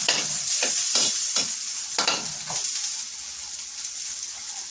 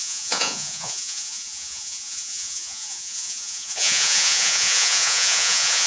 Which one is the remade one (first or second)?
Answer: second